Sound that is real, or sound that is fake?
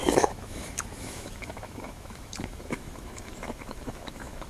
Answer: fake